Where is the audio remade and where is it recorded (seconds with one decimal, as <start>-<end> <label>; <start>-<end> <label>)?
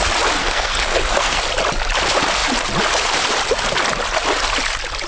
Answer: 0.0-0.4 recorded; 0.4-1.4 remade; 1.4-5.1 recorded